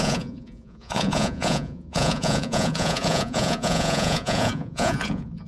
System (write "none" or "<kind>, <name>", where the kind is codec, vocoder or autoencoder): vocoder, Vocos